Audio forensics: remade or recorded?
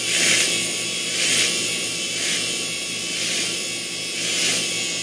recorded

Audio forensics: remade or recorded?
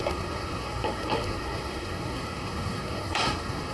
remade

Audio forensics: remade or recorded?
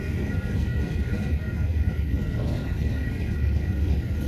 remade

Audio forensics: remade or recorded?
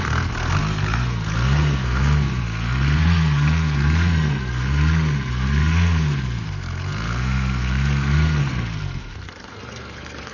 remade